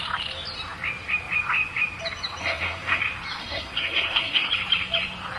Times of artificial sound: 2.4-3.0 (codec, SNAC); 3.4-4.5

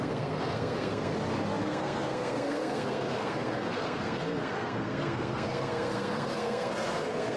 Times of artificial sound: 0.0-1.1 (codec, SNAC); 1.6-7.4

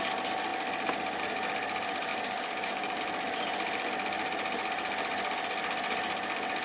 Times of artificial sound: 2.1-3.0 (codec, DAC)

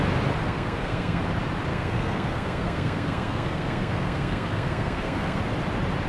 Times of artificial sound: 0.4-1.2 (codec, SNAC); 1.7-5.4

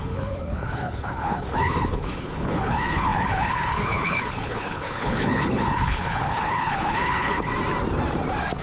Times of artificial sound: 0.0-7.5 (codec, HILCodec)

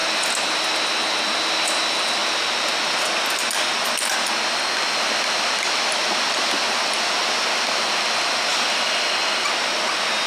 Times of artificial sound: none